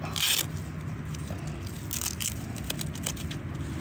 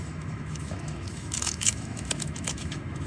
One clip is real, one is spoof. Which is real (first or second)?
first